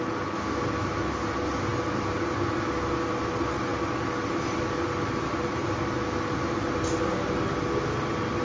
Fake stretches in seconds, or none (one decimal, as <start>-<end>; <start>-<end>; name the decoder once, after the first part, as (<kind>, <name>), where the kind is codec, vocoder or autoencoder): none